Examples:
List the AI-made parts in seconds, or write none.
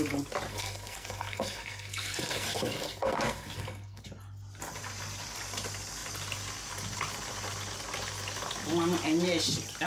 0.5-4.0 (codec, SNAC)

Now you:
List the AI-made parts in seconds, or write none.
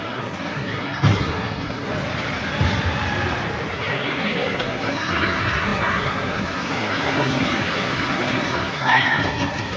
0.0-1.9 (codec, SNAC); 3.7-9.8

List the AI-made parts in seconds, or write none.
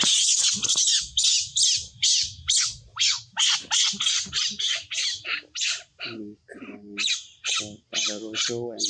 none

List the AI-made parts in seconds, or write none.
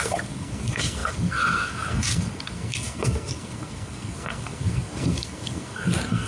0.0-6.3 (codec, SNAC)